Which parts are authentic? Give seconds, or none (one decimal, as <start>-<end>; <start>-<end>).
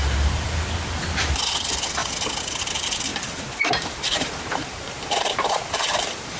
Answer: 0.0-3.1